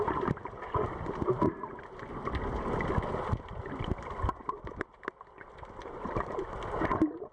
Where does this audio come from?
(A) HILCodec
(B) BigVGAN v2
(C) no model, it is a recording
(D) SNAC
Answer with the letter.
C